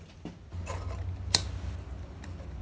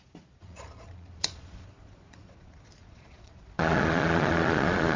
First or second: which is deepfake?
second